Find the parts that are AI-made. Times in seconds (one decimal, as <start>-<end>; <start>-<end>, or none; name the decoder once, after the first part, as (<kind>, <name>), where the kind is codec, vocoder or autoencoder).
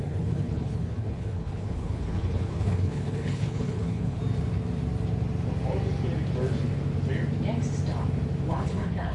0.0-4.2 (codec, HILCodec); 8.5-9.1